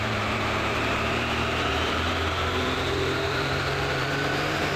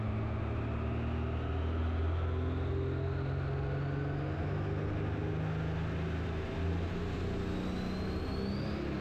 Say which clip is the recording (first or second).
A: second